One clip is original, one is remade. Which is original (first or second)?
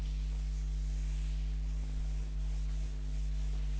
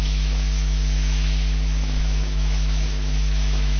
first